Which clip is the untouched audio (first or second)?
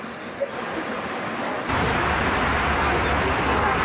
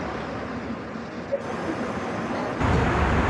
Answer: second